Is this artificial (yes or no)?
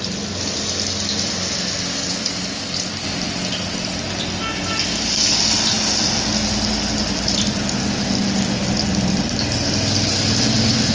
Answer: no